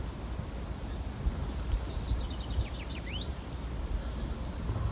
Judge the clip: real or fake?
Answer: real